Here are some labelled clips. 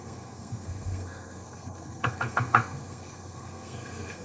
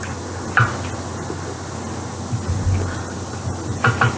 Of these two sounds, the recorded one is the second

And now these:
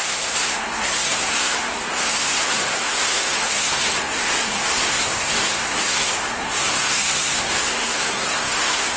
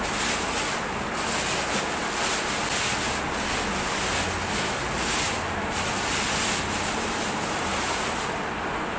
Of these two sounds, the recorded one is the second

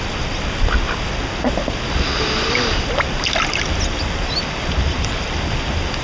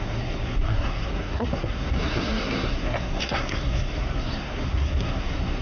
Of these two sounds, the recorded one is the first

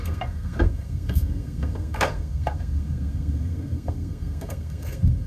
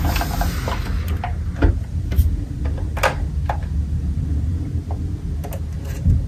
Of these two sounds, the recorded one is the second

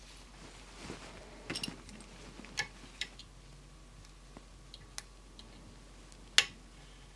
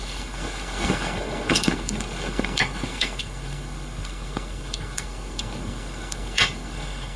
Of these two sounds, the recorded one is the first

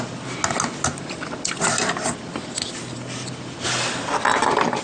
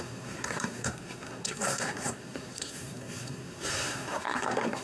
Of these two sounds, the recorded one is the first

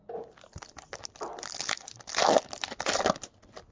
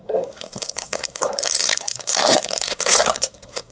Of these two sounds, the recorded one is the first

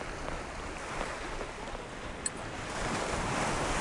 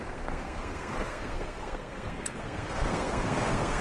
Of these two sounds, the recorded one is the first